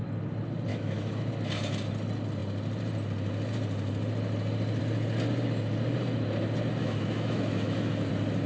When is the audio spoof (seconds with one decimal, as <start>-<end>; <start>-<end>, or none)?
0.7-1.3; 6.8-8.1